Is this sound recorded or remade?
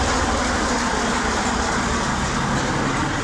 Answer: recorded